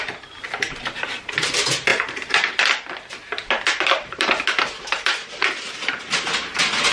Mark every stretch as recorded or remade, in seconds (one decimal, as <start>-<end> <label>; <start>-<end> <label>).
0.0-6.9 recorded